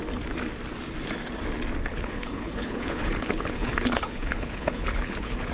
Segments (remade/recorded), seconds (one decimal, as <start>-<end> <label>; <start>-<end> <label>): 0.0-1.9 recorded; 1.9-5.5 remade